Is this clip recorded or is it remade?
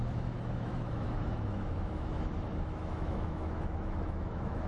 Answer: remade